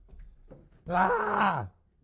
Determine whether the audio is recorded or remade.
remade